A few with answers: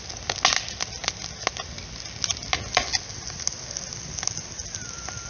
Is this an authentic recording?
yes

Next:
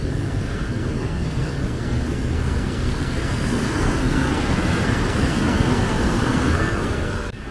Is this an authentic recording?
no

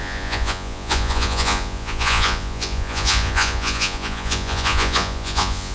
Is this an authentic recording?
no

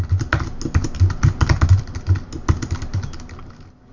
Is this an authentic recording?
yes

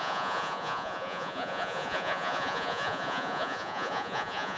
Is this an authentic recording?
no